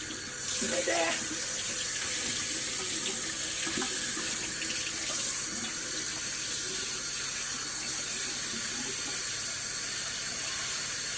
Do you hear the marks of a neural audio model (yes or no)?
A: no